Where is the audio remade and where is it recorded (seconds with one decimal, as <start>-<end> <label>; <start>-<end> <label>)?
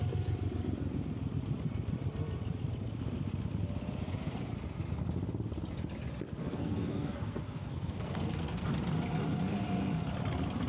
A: 0.0-6.4 recorded; 6.4-8.7 remade; 8.7-10.7 recorded